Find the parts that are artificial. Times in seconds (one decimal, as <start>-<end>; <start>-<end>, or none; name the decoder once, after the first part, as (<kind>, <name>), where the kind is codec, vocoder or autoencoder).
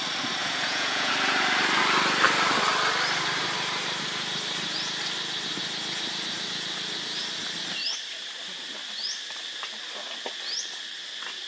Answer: 0.4-1.1 (vocoder, Vocos)